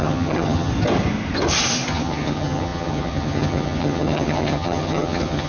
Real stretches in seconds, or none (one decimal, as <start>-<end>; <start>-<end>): 0.7-1.9